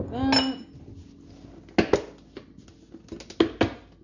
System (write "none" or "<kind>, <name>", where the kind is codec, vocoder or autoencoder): none